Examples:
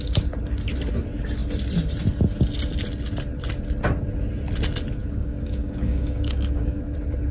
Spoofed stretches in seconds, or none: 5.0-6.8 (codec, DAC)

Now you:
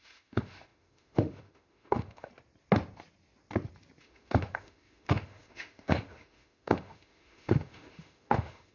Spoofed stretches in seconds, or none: 0.0-2.3 (autoencoder, DAC-VAE); 4.0-8.7

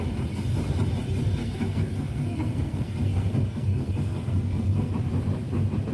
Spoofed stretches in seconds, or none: 1.4-4.9 (codec, SNAC)

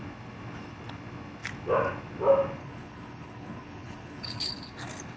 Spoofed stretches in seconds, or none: 2.6-4.7 (codec, HILCodec)

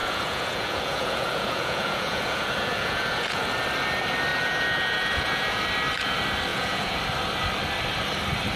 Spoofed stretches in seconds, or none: 0.0-3.4 (vocoder, Vocos); 4.3-5.6; 6.5-7.0

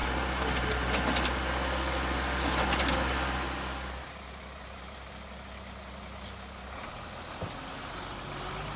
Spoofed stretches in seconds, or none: none

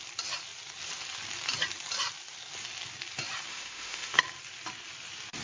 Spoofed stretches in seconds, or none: 3.5-4.2 (autoencoder, DAC-VAE)

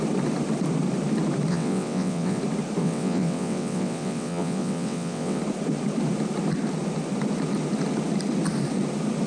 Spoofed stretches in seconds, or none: 1.5-2.4 (vocoder, WaveNeXt); 2.8-5.4